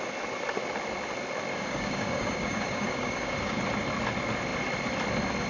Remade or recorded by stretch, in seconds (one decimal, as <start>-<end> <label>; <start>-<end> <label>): 0.0-1.5 recorded; 1.5-3.6 remade; 3.6-5.5 recorded